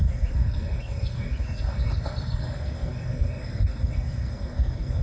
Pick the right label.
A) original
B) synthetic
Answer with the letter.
B